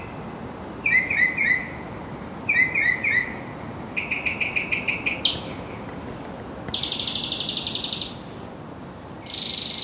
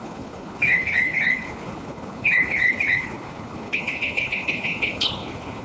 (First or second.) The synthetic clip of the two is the second